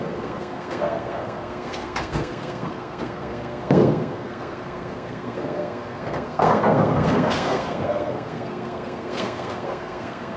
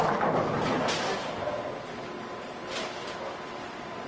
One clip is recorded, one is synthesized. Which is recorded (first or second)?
second